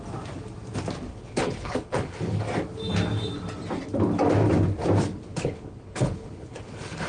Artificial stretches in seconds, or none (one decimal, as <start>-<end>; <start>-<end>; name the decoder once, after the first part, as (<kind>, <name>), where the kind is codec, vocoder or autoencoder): 1.1-2.4 (codec, HILCodec); 5.3-7.1